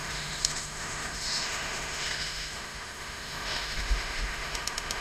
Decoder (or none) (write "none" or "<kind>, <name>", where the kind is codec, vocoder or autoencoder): autoencoder, DAC-VAE